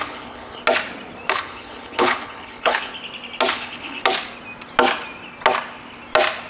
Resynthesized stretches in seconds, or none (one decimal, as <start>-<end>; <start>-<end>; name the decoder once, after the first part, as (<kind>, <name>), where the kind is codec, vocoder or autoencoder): 0.0-0.6 (codec, HILCodec); 1.3-2.9; 3.5-4.0